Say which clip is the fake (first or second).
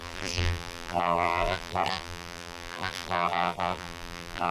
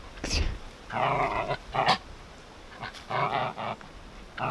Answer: first